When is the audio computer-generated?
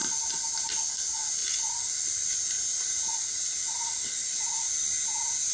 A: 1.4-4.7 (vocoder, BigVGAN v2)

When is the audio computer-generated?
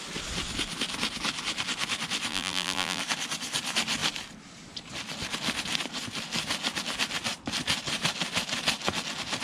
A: 2.3-3.0 (vocoder, BigVGAN v2)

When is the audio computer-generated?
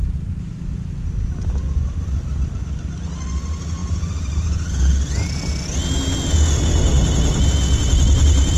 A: 3.8-4.7 (vocoder, BigVGAN v2)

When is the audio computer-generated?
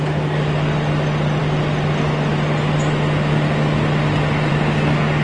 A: none